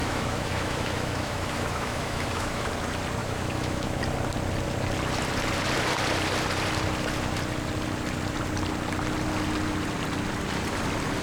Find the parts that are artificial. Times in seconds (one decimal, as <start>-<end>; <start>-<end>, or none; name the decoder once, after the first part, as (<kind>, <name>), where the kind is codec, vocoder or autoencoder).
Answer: 0.0-2.7 (autoencoder, DAC-VAE); 3.2-4.0